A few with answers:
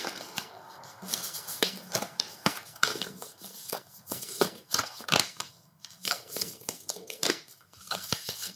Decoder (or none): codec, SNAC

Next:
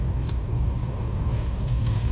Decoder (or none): codec, DAC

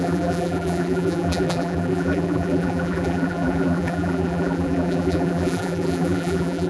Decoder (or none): vocoder, BigVGAN v2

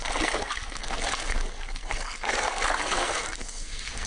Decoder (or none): codec, SNAC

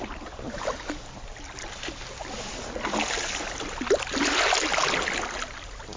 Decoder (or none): none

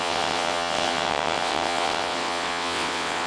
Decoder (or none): vocoder, WaveNeXt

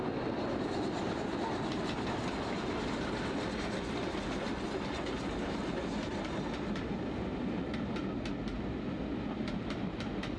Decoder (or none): none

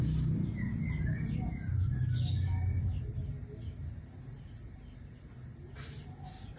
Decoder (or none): none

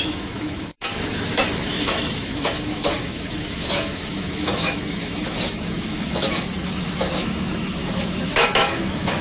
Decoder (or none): autoencoder, DAC-VAE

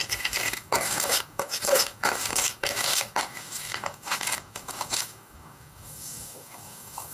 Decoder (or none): codec, DAC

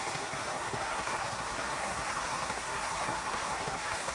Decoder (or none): codec, SNAC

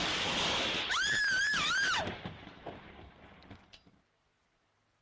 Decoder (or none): vocoder, BigVGAN v2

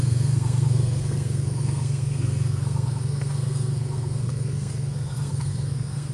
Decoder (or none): codec, SNAC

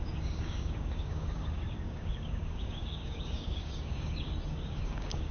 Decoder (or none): codec, DAC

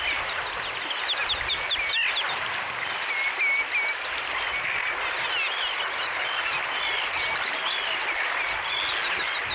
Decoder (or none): none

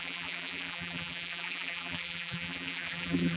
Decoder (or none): vocoder, BigVGAN v2